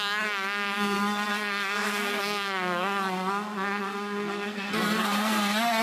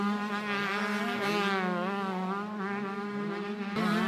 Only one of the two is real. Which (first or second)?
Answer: second